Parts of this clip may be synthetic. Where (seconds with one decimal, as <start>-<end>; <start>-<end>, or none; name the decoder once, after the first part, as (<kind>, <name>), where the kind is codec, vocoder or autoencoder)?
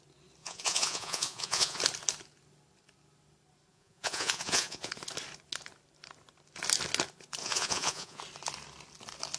0.4-1.8 (vocoder, Vocos); 3.7-4.9; 7.4-8.2